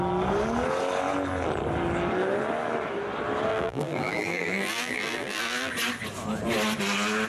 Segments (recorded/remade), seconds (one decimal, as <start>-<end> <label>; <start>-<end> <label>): 0.0-3.5 recorded; 3.5-5.7 remade; 5.7-7.3 recorded